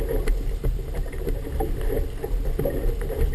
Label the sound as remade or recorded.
recorded